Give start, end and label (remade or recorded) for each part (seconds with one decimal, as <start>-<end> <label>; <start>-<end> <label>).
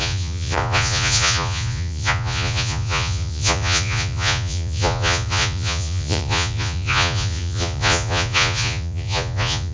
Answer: 0.0-9.7 remade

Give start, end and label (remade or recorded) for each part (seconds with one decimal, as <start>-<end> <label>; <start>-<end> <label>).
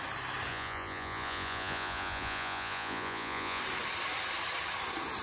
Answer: 0.0-0.5 recorded; 0.5-3.6 remade; 3.6-5.2 recorded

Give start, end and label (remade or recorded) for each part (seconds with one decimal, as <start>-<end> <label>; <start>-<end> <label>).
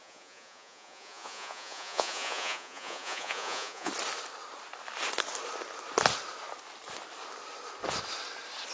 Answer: 0.0-3.9 remade; 3.9-8.7 recorded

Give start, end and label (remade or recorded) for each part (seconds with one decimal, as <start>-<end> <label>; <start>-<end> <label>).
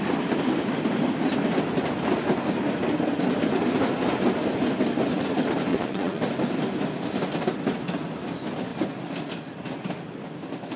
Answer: 0.0-5.7 recorded; 5.7-6.2 remade; 6.2-10.8 recorded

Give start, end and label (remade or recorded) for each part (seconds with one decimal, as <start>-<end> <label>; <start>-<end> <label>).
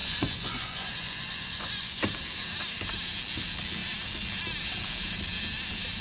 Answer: 0.0-2.0 remade; 2.0-6.0 recorded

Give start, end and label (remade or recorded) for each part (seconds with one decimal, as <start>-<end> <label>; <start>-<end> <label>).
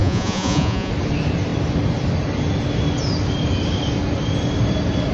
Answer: 0.0-0.9 remade; 0.9-5.1 recorded